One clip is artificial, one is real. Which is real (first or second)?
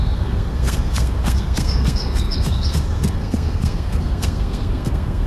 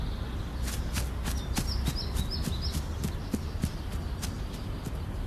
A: second